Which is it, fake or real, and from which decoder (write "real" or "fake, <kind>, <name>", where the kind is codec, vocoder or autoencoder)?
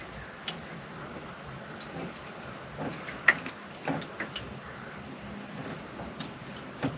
real